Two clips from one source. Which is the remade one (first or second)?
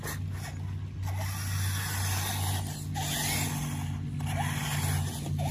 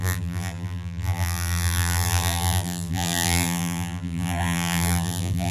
second